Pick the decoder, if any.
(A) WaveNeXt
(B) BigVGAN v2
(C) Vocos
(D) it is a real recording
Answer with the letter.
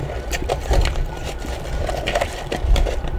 B